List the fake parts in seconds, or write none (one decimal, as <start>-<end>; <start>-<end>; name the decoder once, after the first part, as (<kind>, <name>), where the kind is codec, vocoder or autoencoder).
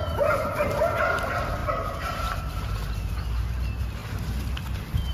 1.6-2.4 (vocoder, BigVGAN v2)